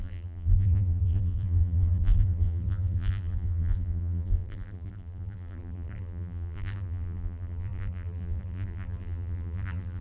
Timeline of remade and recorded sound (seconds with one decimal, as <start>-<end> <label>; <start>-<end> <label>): 0.0-10.0 remade